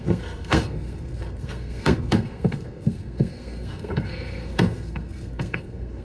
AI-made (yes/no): yes